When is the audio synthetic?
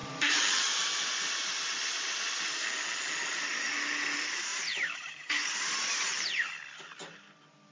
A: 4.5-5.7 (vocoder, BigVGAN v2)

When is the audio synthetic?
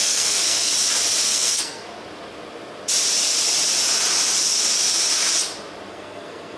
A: 0.0-0.7 (codec, SNAC); 1.2-1.9; 5.9-6.6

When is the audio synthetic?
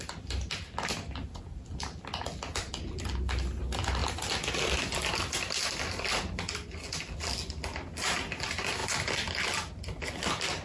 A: none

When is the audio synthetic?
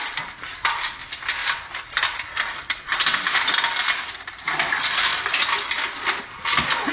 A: none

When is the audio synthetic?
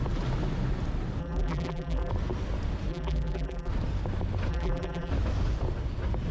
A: 1.2-2.1 (vocoder, BigVGAN v2); 2.9-3.7; 4.5-5.1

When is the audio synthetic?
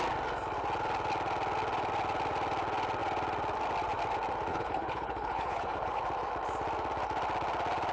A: 4.5-6.0 (codec, HILCodec)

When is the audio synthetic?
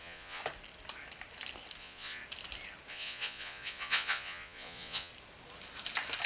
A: 0.0-0.4 (vocoder, Vocos); 1.8-2.2; 2.9-5.1